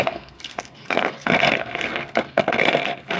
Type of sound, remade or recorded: remade